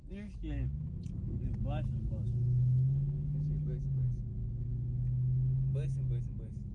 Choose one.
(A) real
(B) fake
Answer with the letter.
A